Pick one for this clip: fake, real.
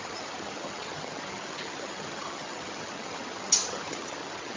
fake